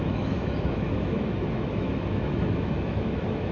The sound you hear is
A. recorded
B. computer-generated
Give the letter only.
B